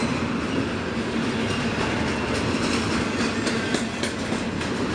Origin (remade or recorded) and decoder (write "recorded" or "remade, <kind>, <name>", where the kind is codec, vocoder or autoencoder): recorded